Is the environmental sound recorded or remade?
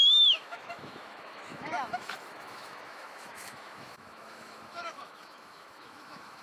remade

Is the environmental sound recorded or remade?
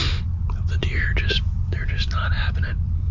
recorded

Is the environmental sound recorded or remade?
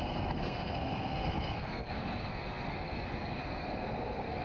remade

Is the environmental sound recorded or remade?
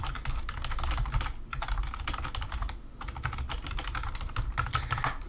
recorded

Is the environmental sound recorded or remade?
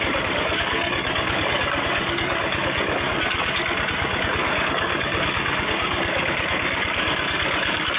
remade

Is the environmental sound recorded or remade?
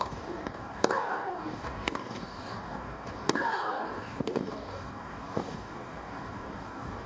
remade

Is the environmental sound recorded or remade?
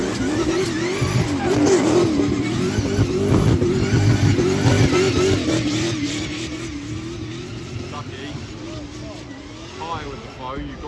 recorded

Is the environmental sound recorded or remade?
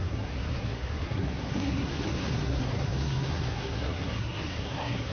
remade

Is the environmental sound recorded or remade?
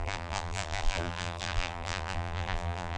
remade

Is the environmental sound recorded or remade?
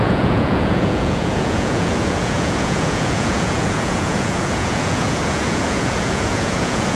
remade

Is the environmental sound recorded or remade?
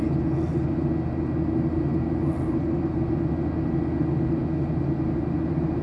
recorded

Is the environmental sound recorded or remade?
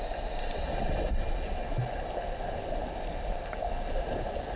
recorded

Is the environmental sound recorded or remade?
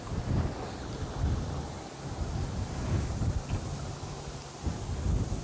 recorded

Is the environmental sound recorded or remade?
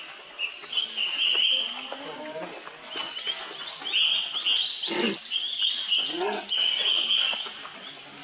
recorded